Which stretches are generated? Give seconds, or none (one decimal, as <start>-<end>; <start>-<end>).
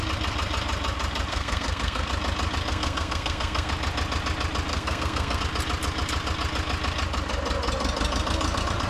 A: 1.3-2.1; 2.7-3.7; 4.7-5.4